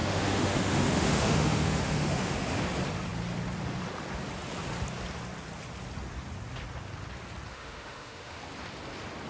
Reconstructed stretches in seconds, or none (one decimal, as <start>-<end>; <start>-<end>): 0.0-2.3; 7.5-8.4